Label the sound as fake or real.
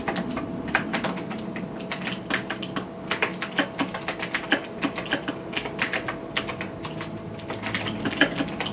real